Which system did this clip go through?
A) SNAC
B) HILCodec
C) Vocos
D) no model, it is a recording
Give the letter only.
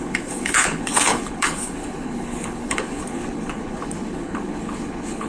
B